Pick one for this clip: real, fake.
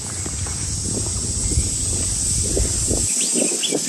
real